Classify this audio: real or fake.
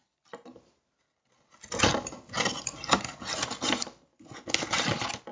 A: real